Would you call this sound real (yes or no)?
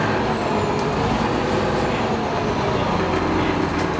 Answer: yes